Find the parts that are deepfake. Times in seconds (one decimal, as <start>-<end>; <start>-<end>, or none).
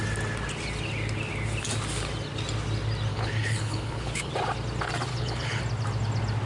3.1-4.3; 5.1-5.6